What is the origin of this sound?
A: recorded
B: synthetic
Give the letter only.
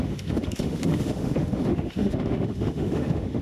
B